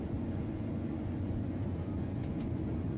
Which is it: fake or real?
fake